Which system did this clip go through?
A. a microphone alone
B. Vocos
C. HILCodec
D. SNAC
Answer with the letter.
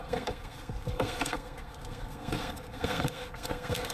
D